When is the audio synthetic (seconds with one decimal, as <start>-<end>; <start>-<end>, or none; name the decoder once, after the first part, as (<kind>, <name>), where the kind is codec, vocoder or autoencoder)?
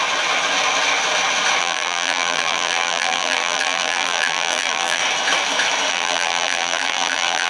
1.6-5.0 (vocoder, BigVGAN v2); 5.9-7.5